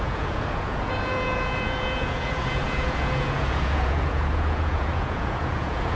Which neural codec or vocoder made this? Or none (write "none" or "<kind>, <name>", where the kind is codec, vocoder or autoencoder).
vocoder, Vocos